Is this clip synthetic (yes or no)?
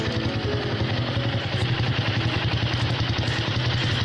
no